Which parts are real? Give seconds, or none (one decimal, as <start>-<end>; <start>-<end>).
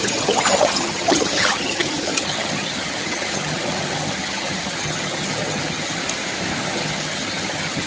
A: 6.0-6.6